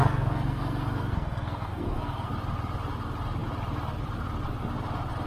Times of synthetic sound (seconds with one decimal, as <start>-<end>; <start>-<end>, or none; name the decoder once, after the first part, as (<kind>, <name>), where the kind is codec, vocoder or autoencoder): 0.0-2.3 (codec, SNAC)